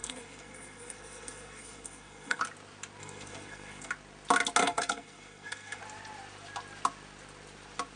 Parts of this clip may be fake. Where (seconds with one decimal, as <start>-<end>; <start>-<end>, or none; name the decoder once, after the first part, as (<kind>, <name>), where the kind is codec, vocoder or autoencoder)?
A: 0.0-2.4 (codec, SNAC); 3.0-3.9; 4.6-5.8